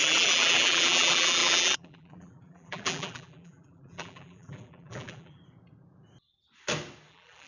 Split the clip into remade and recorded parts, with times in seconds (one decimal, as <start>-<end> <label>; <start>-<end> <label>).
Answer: 0.0-5.4 remade; 5.4-7.1 recorded; 7.1-7.5 remade